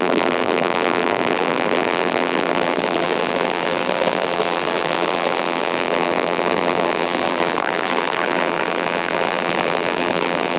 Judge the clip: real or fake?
fake